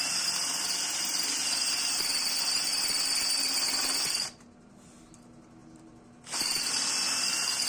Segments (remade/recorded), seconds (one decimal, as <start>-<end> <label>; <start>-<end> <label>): 0.0-7.7 recorded

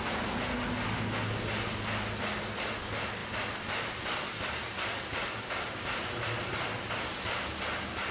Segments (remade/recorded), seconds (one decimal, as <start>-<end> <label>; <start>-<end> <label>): 0.0-8.1 recorded

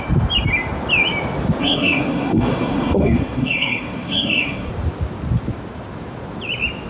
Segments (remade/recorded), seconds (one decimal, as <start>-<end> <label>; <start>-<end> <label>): 0.0-1.6 recorded; 1.6-4.7 remade; 4.7-6.9 recorded

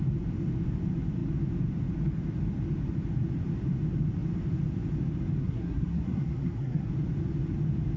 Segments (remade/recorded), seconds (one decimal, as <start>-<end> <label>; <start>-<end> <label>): 0.0-5.4 recorded; 5.4-6.9 remade; 6.9-8.0 recorded

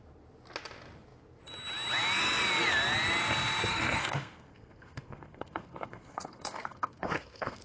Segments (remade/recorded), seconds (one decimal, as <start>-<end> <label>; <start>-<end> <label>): 0.0-3.7 recorded; 3.7-7.6 remade

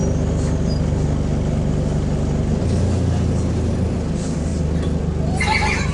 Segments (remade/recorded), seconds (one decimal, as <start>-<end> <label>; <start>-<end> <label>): 0.0-5.9 recorded

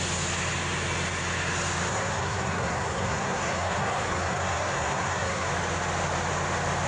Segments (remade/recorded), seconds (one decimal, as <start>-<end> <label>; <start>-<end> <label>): 0.0-1.9 recorded; 1.9-5.5 remade; 5.5-6.9 recorded